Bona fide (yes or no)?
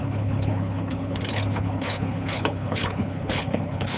no